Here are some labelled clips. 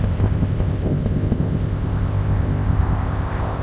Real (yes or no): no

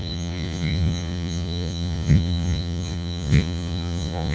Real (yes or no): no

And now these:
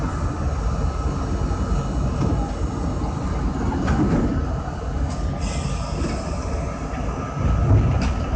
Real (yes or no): yes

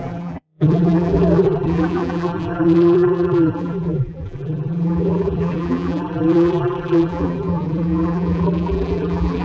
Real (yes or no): no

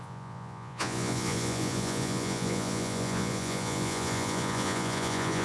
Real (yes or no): no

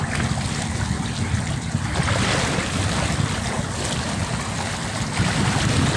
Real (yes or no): yes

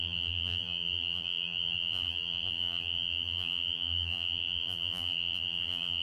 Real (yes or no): no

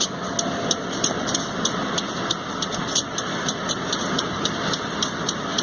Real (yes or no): yes